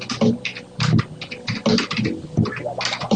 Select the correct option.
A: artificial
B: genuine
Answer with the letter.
B